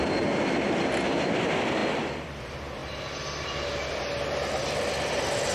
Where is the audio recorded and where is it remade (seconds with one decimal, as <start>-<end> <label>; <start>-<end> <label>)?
0.0-2.8 remade; 2.8-3.9 recorded; 3.9-5.5 remade